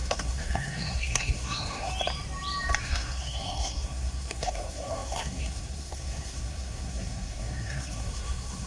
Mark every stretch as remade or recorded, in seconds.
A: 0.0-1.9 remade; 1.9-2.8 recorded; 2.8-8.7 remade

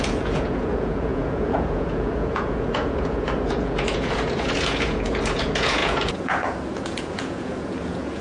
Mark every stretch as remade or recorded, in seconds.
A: 0.0-8.2 remade

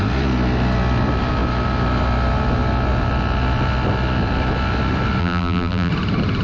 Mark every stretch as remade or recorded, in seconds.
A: 0.0-5.2 recorded; 5.2-5.9 remade; 5.9-6.4 recorded

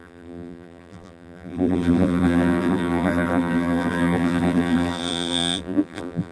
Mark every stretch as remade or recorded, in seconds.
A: 0.0-6.3 remade

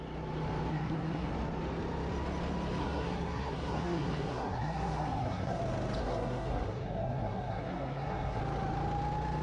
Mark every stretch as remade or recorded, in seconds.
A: 0.0-0.7 recorded; 0.7-1.3 remade; 1.3-2.8 recorded; 2.8-5.6 remade; 5.6-6.0 recorded; 6.0-8.4 remade; 8.4-9.4 recorded

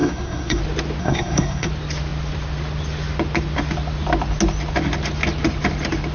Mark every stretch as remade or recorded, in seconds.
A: 0.0-0.6 remade; 0.6-1.0 recorded; 1.0-1.7 remade; 1.7-6.1 recorded

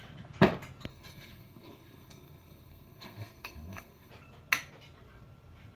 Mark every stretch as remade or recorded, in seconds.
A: 0.0-0.9 recorded; 0.9-4.1 remade; 4.1-5.7 recorded